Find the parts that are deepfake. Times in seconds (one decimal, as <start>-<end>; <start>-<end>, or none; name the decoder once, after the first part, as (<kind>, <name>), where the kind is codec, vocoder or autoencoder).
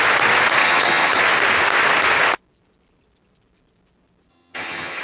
0.6-1.2 (vocoder, HiFi-GAN); 4.3-5.0